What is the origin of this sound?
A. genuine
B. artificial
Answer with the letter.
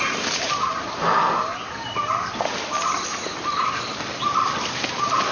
A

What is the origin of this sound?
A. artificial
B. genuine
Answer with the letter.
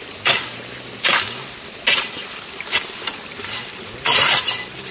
B